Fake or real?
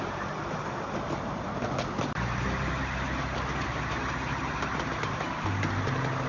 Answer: real